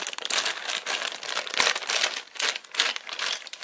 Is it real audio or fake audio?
real